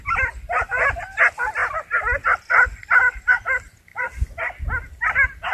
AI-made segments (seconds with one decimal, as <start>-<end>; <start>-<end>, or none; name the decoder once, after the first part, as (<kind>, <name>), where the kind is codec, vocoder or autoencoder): none